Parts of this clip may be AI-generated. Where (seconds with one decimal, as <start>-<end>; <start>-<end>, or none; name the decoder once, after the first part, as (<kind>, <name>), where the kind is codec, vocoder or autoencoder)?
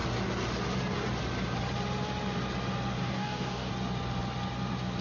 3.0-3.7 (codec, DAC)